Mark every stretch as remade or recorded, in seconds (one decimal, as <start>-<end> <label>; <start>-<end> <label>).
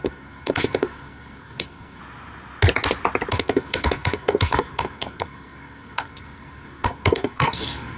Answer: 0.0-2.0 remade; 2.0-3.3 recorded; 3.3-8.0 remade